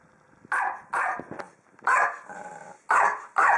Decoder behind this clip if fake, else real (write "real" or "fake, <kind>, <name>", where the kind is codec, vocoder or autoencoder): real